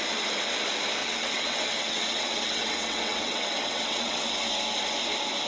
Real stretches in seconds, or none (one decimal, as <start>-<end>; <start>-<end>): 0.0-1.0; 4.3-5.5

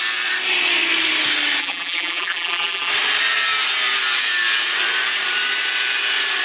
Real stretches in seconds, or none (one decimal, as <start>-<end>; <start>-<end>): 0.0-1.6; 2.9-6.4

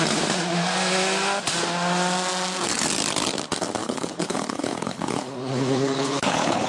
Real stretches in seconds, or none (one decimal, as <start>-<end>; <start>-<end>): 0.0-3.8